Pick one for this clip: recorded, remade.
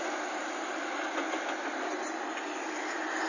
recorded